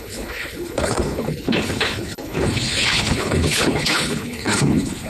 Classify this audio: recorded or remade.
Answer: remade